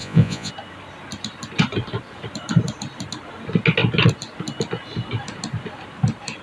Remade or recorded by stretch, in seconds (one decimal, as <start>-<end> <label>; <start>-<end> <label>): 0.0-0.5 remade; 0.5-6.4 recorded